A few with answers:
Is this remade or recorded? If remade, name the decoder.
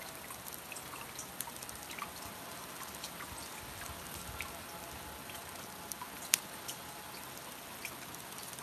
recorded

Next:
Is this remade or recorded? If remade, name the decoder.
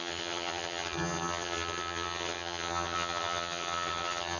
remade, vocoder, HiFi-GAN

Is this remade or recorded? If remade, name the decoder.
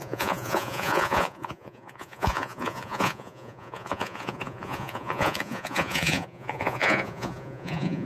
remade, vocoder, Vocos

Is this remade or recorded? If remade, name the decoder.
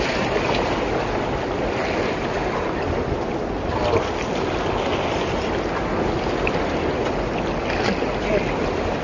recorded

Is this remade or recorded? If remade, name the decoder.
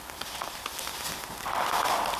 remade, vocoder, BigVGAN v2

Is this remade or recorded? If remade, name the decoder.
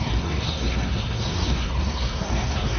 remade, codec, SNAC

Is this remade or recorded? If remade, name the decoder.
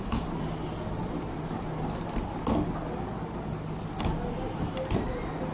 recorded